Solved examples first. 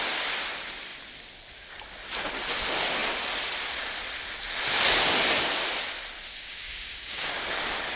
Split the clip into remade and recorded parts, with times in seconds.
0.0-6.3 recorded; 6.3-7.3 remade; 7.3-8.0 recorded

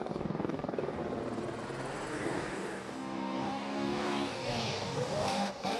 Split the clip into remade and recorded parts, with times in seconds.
0.0-1.0 remade; 1.0-2.1 recorded; 2.1-5.8 remade

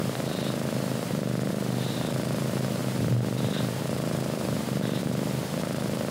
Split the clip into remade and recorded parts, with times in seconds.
0.0-6.1 recorded

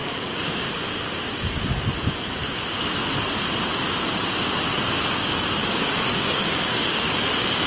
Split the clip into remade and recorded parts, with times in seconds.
0.0-1.7 remade; 1.7-2.4 recorded; 2.4-2.9 remade; 2.9-4.7 recorded; 4.7-7.7 remade

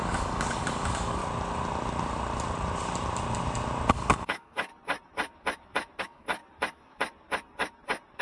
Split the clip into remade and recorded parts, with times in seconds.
0.0-1.2 remade; 1.2-3.9 recorded; 3.9-4.7 remade; 4.7-6.0 recorded; 6.0-6.4 remade; 6.4-8.2 recorded

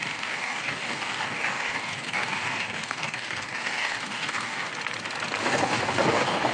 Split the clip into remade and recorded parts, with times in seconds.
0.0-4.7 remade; 4.7-5.4 recorded; 5.4-6.5 remade